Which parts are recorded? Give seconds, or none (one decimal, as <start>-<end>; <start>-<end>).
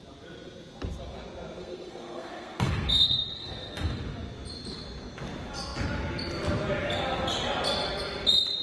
0.0-1.6; 4.0-8.6